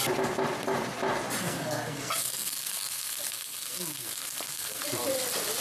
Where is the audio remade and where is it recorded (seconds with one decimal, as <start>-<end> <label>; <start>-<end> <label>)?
0.0-1.4 recorded; 1.4-4.8 remade; 4.8-5.6 recorded